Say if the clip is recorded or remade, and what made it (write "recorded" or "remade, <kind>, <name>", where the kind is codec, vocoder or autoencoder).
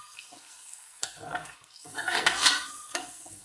remade, codec, SNAC